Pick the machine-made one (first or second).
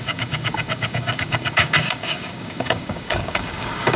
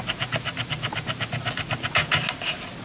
first